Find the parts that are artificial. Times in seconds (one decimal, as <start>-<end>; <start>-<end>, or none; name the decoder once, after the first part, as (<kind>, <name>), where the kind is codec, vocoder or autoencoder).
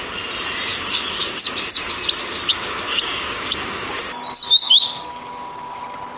0.7-1.9 (codec, DAC); 2.5-4.0; 4.6-5.8